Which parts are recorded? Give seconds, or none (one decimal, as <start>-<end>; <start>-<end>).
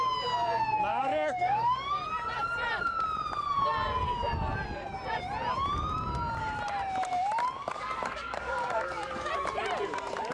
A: 0.0-0.9; 1.9-7.1; 9.3-10.3